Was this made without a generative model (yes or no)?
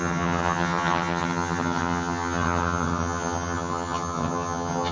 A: no